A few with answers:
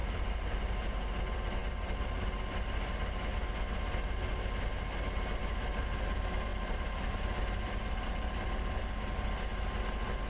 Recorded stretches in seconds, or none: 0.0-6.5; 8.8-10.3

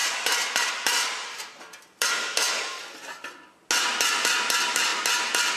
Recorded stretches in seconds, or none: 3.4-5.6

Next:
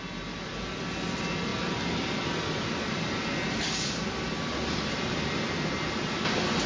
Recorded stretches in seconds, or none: 0.0-1.5; 5.5-6.7

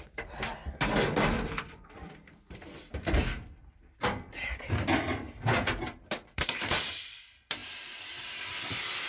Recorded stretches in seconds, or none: 0.5-1.6; 7.6-8.2

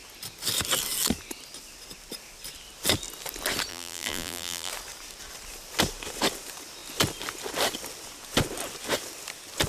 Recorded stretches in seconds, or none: 0.0-3.7; 4.7-9.7

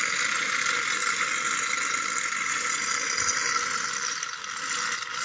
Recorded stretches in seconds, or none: 0.0-1.0; 2.5-3.4; 4.4-5.2

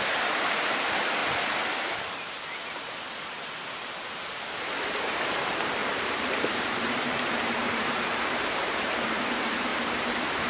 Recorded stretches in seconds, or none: 1.2-3.7